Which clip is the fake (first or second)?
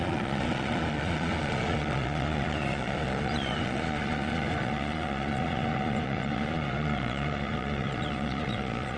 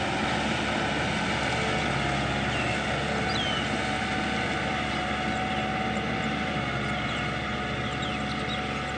first